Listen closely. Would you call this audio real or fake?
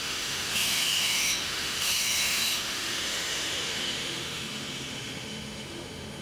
fake